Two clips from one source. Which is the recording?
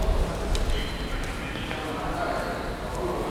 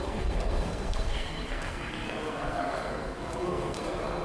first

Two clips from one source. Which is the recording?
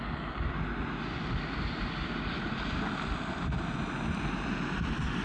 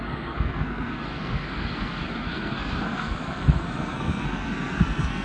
first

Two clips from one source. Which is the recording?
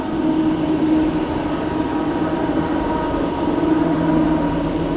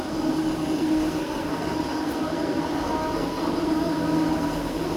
first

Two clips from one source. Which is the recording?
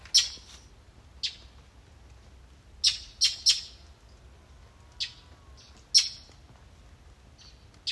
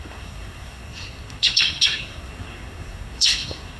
first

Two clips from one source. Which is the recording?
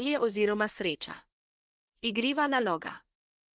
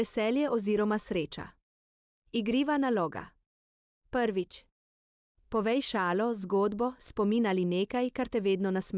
second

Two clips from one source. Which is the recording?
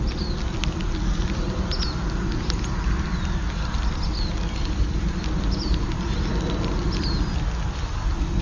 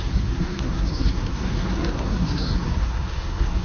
first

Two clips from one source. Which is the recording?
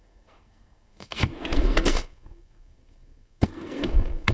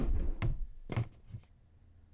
second